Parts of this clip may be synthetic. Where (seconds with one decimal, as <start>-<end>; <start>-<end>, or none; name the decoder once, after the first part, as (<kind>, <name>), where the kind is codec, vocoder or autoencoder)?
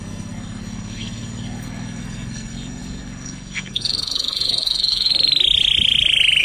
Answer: 0.0-5.1 (codec, SNAC)